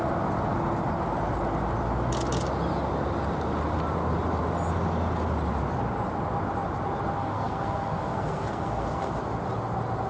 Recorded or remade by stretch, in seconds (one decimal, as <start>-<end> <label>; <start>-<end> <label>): 0.0-7.2 recorded; 7.2-9.1 remade; 9.1-10.1 recorded